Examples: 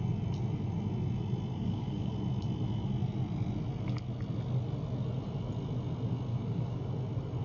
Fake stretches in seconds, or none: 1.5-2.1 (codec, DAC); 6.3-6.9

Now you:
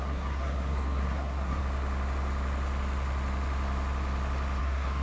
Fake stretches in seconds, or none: 0.0-1.6 (codec, SNAC); 4.6-5.0

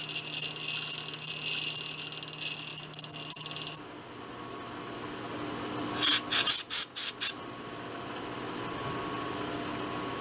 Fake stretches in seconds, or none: none

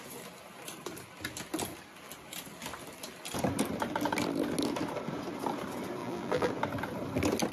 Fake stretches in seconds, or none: 6.0-6.5 (vocoder, BigVGAN v2)